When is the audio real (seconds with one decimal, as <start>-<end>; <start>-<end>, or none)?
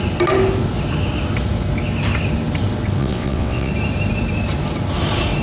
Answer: 0.0-3.0; 3.7-5.4